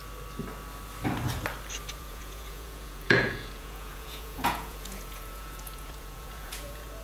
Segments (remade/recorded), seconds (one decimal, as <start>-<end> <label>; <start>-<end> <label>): 0.0-1.9 recorded; 1.9-7.0 remade